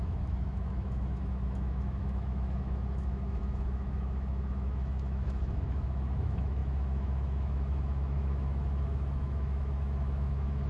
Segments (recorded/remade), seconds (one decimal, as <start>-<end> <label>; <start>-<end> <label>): 0.0-10.7 remade